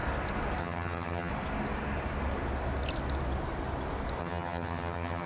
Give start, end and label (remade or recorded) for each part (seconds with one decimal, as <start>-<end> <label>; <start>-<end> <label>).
0.0-0.6 recorded; 0.6-1.3 remade; 1.3-4.2 recorded; 4.2-5.3 remade